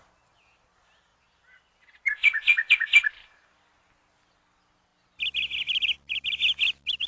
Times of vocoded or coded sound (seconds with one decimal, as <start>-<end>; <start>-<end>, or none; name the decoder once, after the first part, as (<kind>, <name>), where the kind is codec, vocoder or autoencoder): none